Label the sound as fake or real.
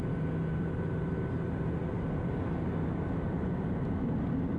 real